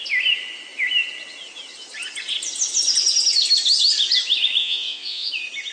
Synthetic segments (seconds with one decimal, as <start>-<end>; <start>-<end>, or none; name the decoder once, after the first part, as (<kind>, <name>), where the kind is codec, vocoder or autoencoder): 4.6-5.3 (vocoder, Vocos)